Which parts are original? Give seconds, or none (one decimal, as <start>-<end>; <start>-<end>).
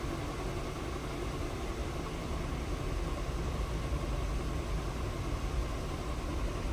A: 0.0-6.7